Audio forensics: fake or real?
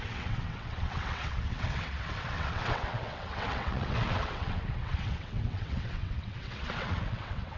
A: fake